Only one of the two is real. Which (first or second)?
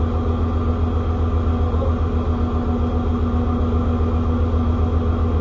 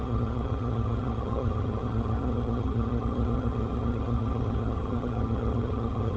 first